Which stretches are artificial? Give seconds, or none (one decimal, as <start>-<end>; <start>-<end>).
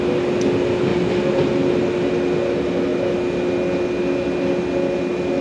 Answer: none